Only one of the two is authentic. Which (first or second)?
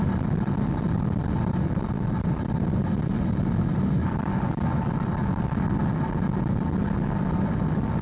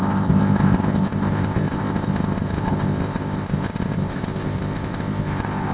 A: first